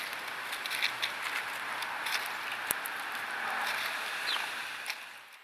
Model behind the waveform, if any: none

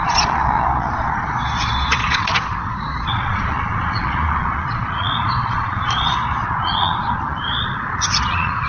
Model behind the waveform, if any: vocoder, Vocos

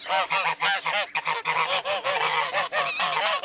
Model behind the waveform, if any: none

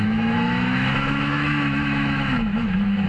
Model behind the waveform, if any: autoencoder, DAC-VAE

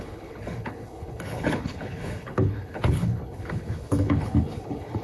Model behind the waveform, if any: codec, HILCodec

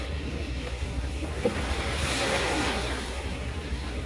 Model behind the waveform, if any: codec, SNAC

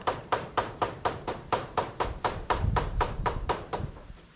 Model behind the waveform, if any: vocoder, BigVGAN v2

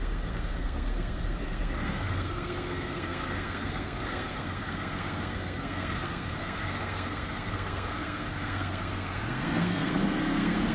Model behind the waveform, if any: codec, SNAC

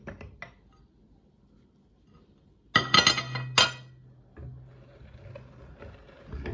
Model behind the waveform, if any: none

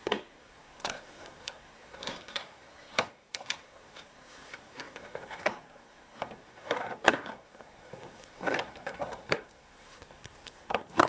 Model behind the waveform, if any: codec, SNAC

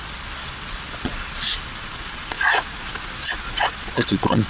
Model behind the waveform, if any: vocoder, Vocos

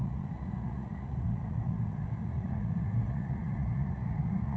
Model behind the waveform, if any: vocoder, Vocos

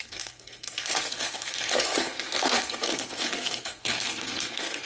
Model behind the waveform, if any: codec, SNAC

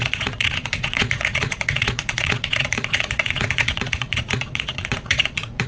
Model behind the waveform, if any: vocoder, Vocos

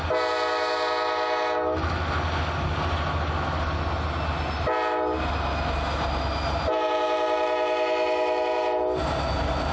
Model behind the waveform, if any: none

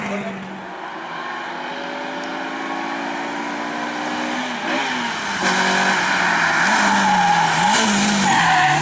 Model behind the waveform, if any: none